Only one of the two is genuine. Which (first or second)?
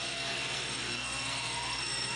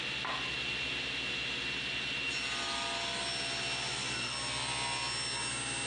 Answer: second